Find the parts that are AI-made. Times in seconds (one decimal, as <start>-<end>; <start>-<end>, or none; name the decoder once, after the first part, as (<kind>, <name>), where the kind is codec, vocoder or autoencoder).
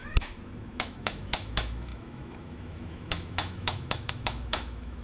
0.0-5.0 (autoencoder, DAC-VAE)